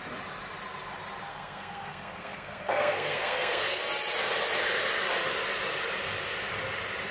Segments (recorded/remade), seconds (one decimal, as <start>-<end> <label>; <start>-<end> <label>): 0.0-1.3 recorded; 1.3-3.8 remade; 3.8-7.1 recorded